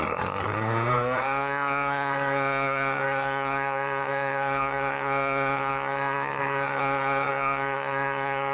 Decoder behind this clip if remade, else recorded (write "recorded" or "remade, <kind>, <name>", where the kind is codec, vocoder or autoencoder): remade, codec, SNAC